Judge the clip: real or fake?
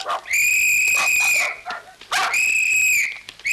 real